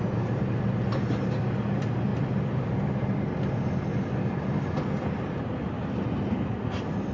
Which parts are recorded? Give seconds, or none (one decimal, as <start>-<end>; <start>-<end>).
0.0-7.1